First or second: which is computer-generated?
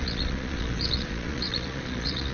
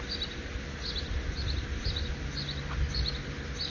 first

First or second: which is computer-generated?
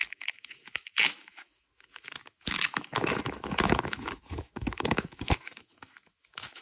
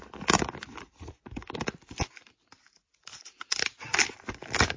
first